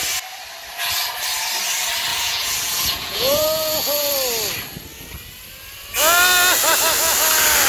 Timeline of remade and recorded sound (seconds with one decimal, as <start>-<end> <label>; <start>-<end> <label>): 0.0-2.1 recorded; 2.1-4.1 remade; 4.1-7.7 recorded